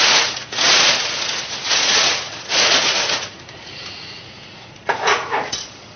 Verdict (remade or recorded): remade